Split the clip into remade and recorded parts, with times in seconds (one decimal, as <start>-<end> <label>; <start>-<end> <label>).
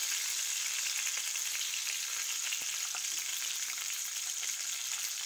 0.0-3.3 recorded; 3.3-4.3 remade; 4.3-5.3 recorded